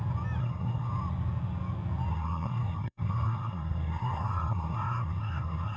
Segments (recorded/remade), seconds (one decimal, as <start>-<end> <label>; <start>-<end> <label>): 0.0-0.4 recorded; 0.4-0.9 remade; 0.9-2.1 recorded; 2.1-5.8 remade